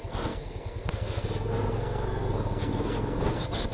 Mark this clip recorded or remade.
remade